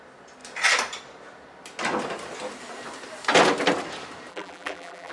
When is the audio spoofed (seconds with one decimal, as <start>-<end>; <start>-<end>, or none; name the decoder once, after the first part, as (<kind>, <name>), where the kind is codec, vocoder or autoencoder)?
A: 4.3-5.1 (vocoder, BigVGAN v2)